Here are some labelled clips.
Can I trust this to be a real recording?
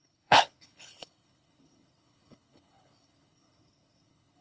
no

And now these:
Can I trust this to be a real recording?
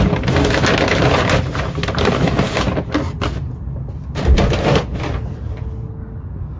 yes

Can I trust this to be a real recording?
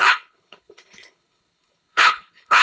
no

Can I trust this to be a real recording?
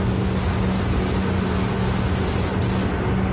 yes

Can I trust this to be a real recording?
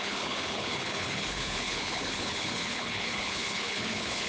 no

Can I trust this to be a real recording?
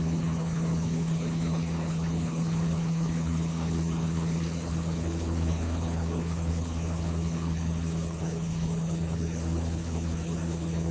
no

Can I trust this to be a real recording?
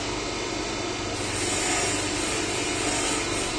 yes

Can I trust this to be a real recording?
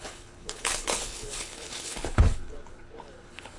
no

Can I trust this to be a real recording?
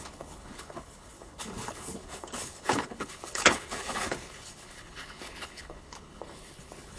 no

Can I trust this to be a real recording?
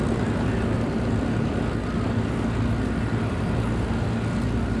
yes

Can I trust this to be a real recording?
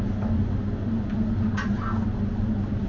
yes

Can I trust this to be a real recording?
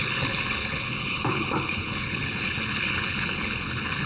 no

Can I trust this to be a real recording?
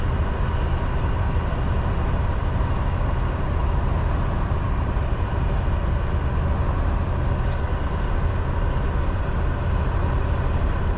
yes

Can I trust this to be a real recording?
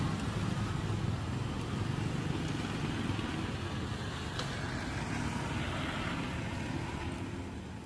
yes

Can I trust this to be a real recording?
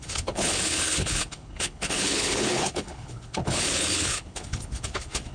no